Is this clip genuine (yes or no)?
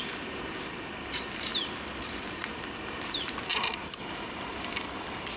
yes